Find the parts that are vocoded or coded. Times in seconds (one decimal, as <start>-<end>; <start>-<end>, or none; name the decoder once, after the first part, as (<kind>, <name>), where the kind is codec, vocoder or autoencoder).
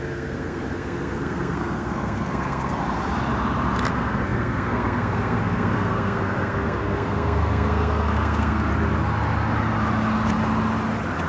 0.0-2.8 (codec, SNAC); 3.9-8.7